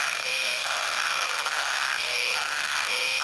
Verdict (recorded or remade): remade